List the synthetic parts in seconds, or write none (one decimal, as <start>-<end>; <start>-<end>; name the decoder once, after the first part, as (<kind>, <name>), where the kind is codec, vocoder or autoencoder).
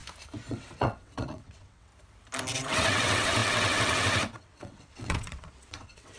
0.5-1.9 (vocoder, WaveNeXt); 2.5-6.2